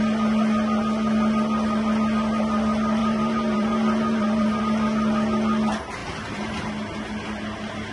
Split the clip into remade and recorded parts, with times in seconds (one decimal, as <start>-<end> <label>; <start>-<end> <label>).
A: 0.0-3.0 recorded; 3.0-4.6 remade; 4.6-6.0 recorded; 6.0-6.6 remade; 6.6-7.9 recorded